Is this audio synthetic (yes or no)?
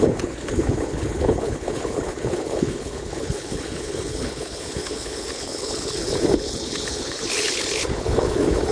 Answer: yes